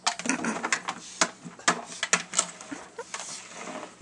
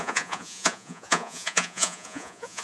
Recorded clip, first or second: first